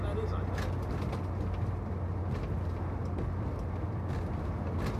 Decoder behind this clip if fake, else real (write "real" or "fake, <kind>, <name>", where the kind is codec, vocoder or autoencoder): real